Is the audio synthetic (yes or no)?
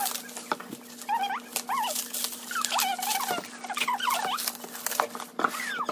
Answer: no